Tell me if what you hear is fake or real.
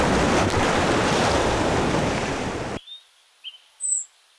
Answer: real